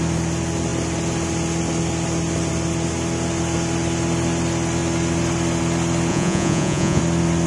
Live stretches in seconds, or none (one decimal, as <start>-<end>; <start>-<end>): 0.0-6.1; 7.0-7.5